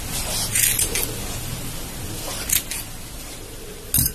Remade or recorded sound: recorded